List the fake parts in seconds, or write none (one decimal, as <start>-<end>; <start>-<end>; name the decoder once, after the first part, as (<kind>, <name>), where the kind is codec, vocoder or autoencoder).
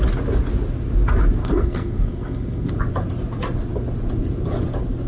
1.4-2.7 (codec, SNAC)